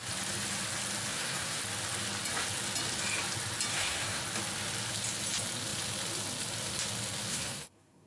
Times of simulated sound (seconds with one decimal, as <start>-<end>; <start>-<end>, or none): 1.1-1.6; 3.7-4.2; 7.3-8.1